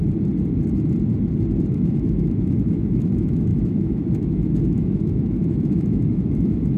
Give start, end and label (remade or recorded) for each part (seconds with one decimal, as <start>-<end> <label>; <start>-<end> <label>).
0.0-1.7 recorded; 1.7-6.8 remade